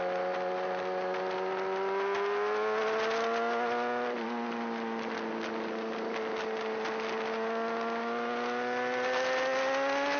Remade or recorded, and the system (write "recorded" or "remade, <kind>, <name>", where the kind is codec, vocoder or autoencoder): recorded